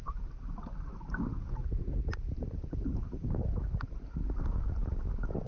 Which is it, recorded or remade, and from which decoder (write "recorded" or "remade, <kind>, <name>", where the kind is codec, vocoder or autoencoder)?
recorded